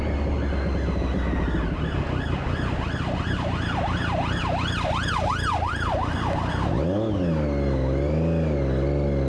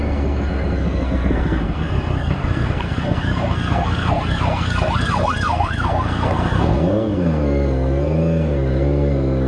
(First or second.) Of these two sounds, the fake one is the second